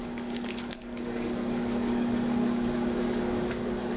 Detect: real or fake fake